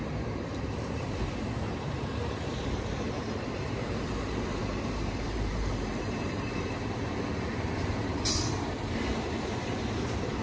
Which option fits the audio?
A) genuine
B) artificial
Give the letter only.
B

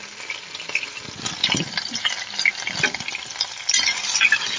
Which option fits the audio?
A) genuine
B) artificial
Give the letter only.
A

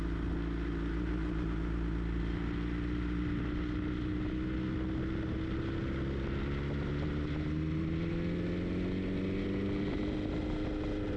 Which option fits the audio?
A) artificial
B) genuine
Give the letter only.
B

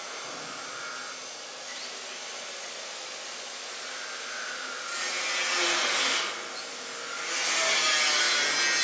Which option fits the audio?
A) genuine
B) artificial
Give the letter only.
A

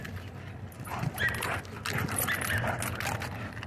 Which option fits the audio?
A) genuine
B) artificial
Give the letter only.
A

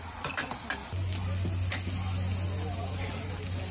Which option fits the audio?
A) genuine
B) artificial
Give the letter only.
A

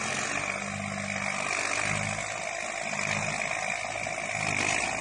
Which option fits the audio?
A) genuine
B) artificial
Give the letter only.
A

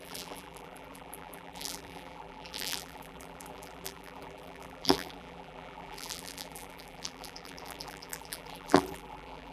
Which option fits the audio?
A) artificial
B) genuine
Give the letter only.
A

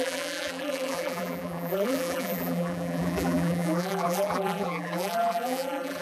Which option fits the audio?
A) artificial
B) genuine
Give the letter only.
A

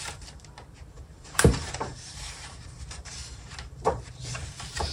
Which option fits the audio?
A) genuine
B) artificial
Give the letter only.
B